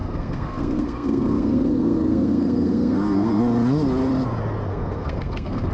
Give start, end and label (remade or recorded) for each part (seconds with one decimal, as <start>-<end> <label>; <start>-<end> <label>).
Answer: 0.0-3.4 remade; 3.4-4.7 recorded; 4.7-5.7 remade